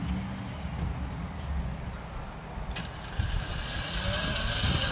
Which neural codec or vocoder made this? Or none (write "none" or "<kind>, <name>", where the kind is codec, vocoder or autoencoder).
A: none